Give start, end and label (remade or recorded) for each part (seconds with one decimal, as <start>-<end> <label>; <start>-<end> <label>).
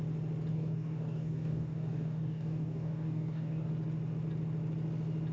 0.0-0.5 recorded; 0.5-3.7 remade; 3.7-5.3 recorded